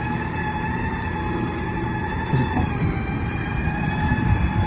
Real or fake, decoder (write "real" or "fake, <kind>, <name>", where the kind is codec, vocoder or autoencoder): real